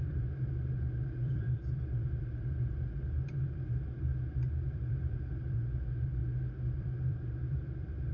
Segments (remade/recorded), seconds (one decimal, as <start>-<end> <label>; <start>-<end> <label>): 0.0-6.2 remade; 6.2-6.8 recorded; 6.8-8.1 remade